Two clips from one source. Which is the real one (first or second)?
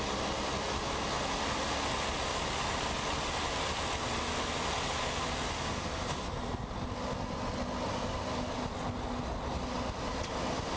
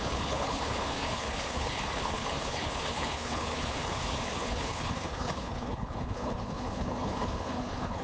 first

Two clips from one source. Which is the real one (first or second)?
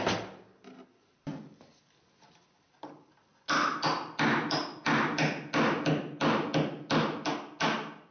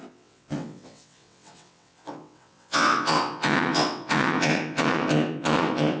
first